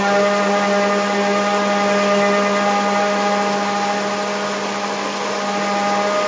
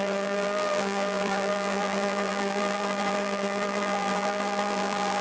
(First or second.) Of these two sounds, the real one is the first